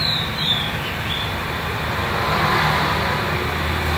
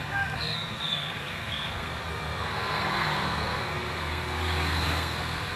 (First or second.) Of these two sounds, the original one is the first